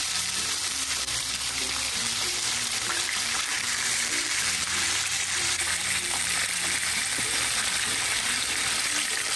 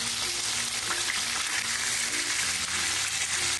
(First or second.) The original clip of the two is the second